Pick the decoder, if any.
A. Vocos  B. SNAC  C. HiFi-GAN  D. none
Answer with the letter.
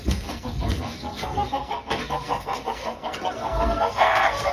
B